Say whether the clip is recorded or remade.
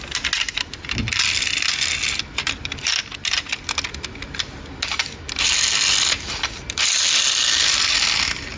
recorded